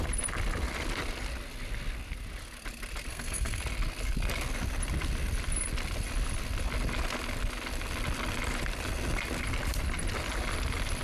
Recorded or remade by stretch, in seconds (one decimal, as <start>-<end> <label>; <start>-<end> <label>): 0.0-3.1 recorded; 3.1-3.6 remade; 3.6-11.0 recorded